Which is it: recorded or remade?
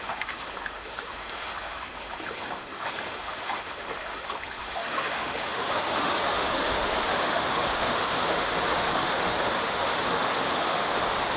remade